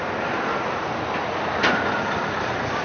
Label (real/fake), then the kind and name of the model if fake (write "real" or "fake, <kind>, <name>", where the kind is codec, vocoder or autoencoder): fake, vocoder, BigVGAN v2